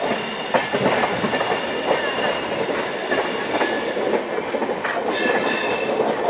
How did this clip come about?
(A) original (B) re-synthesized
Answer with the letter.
A